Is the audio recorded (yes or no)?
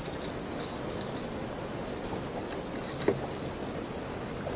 yes